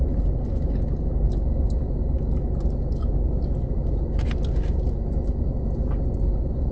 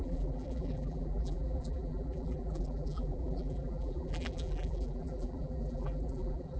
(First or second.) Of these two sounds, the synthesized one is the second